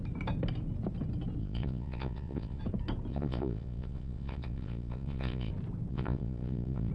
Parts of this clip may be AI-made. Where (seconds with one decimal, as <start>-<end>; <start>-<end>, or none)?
1.4-2.6; 3.1-5.5; 5.9-6.9